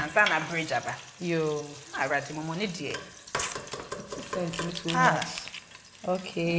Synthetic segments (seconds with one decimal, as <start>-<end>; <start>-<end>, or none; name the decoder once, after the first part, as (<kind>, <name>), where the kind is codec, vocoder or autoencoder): none